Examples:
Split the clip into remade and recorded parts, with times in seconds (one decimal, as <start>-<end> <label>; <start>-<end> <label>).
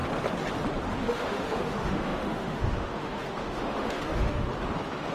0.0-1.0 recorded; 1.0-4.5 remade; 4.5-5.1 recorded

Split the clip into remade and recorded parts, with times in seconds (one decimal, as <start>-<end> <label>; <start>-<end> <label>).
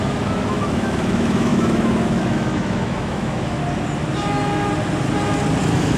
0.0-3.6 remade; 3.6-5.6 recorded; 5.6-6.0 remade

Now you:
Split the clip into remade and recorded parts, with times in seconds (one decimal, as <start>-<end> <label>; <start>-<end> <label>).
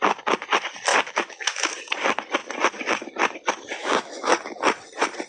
0.0-0.9 recorded; 0.9-1.7 remade; 1.7-3.8 recorded; 3.8-4.3 remade; 4.3-5.3 recorded